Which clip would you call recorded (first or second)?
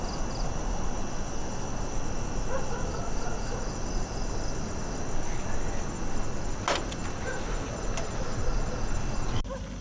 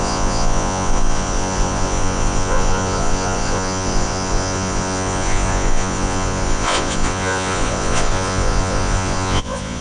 first